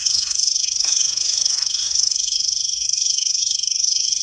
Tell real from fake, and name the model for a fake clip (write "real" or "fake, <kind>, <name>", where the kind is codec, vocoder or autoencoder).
fake, codec, SNAC